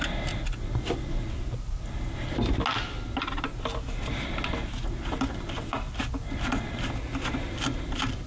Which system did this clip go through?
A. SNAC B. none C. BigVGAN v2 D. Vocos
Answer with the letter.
B